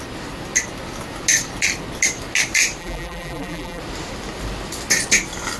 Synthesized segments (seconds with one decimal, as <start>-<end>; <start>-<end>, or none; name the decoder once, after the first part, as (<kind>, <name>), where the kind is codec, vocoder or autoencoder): 2.8-3.8 (vocoder, BigVGAN v2)